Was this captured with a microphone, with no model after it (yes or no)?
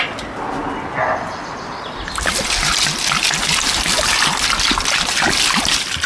yes